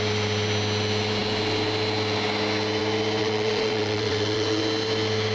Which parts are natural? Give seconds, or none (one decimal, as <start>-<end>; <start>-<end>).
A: 0.0-3.2; 4.6-5.3

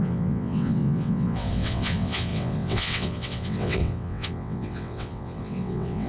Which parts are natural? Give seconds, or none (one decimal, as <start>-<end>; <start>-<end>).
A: none

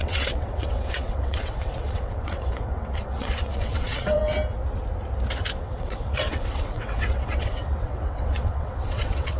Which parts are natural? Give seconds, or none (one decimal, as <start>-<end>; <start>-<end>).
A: 4.2-5.6

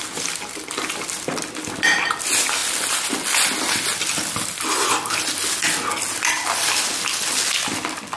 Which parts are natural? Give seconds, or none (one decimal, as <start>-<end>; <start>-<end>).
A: 0.0-8.2

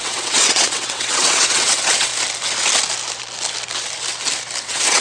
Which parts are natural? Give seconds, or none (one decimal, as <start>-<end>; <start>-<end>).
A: 2.1-4.6

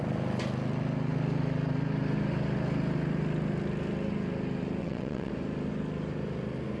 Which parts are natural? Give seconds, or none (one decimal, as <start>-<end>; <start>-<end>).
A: 0.0-4.8; 5.3-6.8

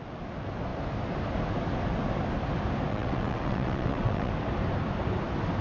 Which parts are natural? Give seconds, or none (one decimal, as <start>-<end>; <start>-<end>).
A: 0.0-2.9; 4.3-5.6